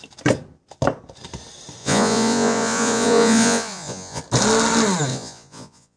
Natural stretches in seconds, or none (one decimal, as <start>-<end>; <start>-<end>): 0.0-1.8; 4.2-5.1